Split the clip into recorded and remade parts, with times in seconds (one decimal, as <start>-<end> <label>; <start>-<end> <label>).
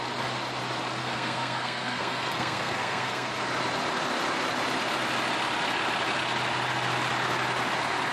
0.0-1.0 recorded; 1.0-3.3 remade; 3.3-8.1 recorded